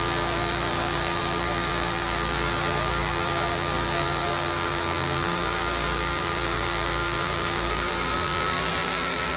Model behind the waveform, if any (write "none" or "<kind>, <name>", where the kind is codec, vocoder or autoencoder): vocoder, BigVGAN v2